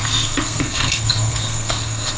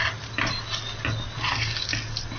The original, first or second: second